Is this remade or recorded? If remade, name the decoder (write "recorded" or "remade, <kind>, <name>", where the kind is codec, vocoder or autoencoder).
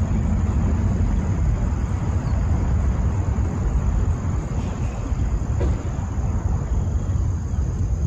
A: remade, vocoder, BigVGAN v2